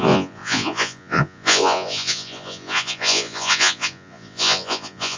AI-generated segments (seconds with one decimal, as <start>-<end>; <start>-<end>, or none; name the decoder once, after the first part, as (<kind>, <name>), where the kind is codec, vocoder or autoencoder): 0.0-5.2 (vocoder, Vocos)